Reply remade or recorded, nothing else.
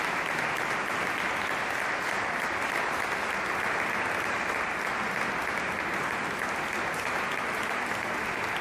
recorded